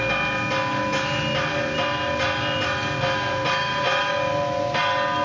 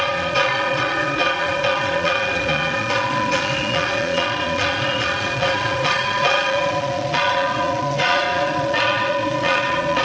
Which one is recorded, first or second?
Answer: first